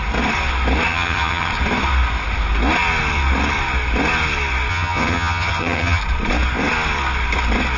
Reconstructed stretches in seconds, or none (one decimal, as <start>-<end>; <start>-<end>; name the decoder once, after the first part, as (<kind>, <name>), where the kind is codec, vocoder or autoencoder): 0.9-1.5 (vocoder, HiFi-GAN); 4.7-6.0